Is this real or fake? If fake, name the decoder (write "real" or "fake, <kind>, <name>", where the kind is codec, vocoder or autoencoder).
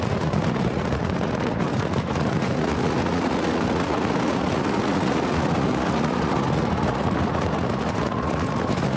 fake, vocoder, Vocos